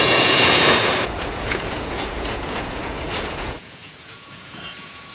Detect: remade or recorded remade